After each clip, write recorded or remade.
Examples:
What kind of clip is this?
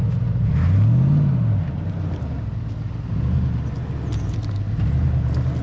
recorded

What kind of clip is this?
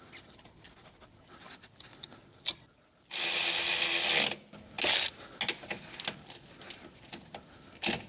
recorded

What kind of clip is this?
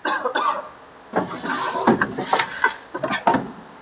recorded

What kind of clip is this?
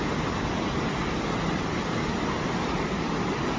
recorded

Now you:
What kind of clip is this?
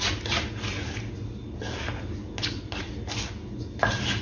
recorded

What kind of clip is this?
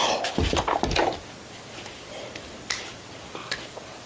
recorded